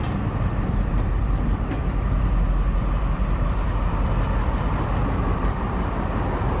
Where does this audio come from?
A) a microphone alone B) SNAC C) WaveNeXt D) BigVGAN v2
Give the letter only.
D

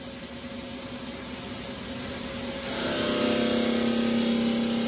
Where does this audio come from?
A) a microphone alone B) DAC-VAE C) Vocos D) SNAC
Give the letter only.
A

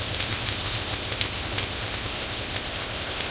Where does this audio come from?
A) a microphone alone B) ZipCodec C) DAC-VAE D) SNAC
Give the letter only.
B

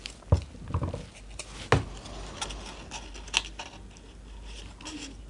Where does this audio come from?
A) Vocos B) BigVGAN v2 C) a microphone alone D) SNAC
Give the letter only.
C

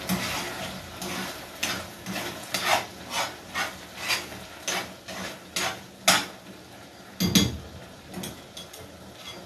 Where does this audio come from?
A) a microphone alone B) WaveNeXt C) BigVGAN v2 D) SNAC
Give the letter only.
A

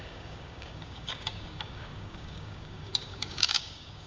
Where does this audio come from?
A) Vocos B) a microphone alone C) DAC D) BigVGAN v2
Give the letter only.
C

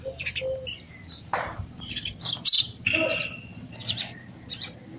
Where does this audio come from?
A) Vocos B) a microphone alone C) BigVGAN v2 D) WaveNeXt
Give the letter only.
C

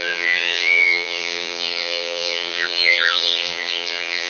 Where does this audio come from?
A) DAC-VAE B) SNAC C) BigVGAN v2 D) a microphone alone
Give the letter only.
C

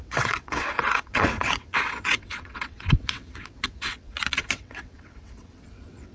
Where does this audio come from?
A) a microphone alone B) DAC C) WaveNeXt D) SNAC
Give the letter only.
C